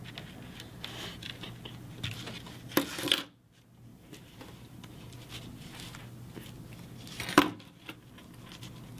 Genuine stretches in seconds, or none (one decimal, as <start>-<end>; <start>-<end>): 0.0-3.9; 5.3-9.0